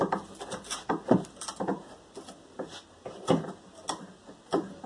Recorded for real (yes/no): yes